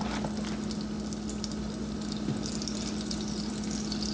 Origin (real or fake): real